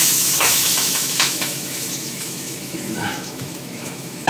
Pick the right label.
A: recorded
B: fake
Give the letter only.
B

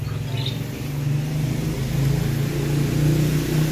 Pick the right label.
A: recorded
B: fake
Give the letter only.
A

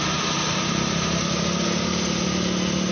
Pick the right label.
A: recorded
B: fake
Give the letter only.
A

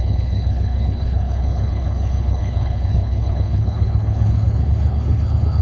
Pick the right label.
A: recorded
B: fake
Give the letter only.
B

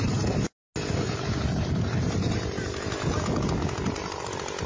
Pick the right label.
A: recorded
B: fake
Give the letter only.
A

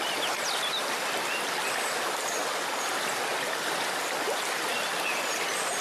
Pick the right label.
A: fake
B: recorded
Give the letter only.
B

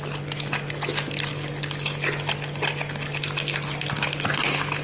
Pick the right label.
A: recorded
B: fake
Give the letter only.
A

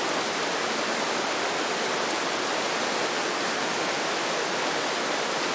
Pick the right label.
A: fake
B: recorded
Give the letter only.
B